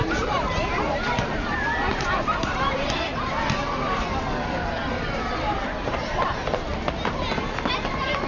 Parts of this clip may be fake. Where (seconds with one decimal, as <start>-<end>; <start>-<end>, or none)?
0.0-3.1; 4.7-6.7; 7.9-8.3